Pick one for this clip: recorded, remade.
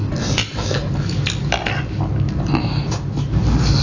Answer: recorded